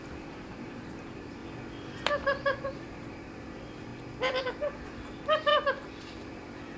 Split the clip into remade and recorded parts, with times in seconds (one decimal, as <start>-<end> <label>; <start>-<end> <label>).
0.0-1.4 remade; 1.4-2.1 recorded; 2.1-3.9 remade; 3.9-4.6 recorded; 4.6-6.8 remade